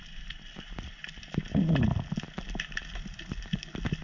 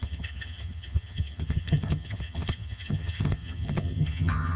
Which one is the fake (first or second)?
second